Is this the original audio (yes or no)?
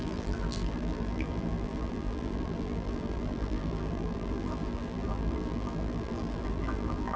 no